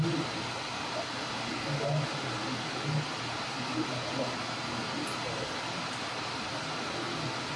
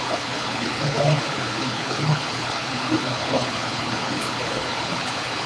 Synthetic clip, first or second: second